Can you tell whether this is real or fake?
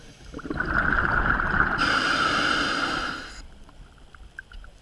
real